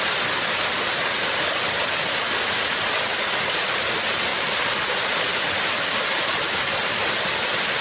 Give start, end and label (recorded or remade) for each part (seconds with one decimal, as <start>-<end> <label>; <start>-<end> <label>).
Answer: 0.0-2.6 recorded; 2.6-3.7 remade; 3.7-4.3 recorded; 4.3-6.6 remade; 6.6-7.8 recorded